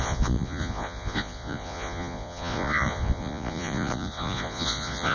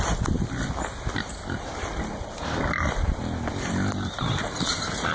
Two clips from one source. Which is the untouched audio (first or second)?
second